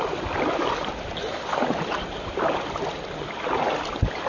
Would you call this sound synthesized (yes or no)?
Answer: no